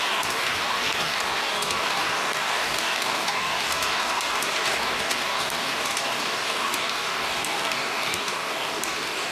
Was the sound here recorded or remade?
remade